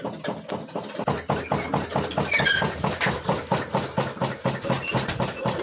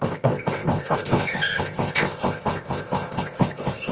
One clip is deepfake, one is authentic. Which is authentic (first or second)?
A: first